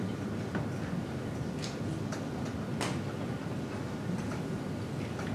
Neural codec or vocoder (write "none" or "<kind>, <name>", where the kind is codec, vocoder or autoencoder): none